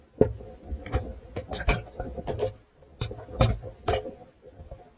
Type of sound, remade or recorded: recorded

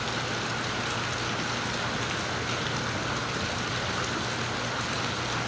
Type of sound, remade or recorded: recorded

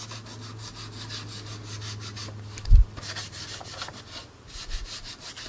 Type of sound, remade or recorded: recorded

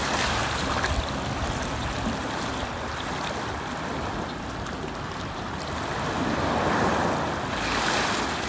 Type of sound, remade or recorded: recorded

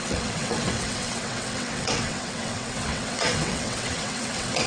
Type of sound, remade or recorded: remade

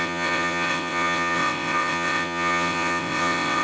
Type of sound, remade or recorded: remade